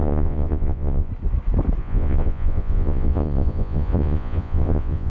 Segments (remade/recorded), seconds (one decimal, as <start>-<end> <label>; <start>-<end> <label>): 0.0-1.1 remade; 1.1-1.8 recorded; 1.8-5.1 remade